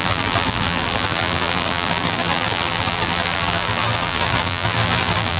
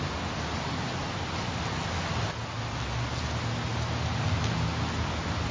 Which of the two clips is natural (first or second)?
second